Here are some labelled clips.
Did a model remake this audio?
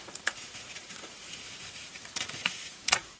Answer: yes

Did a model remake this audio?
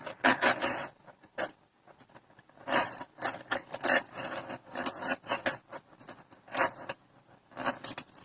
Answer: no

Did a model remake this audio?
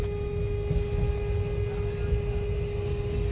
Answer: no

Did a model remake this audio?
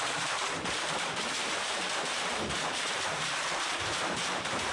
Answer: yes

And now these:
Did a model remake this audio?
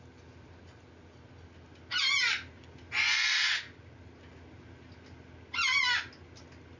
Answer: no